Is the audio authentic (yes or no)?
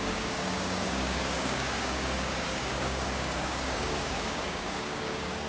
no